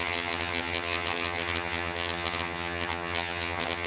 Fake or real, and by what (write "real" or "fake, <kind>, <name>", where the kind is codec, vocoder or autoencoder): fake, vocoder, HiFi-GAN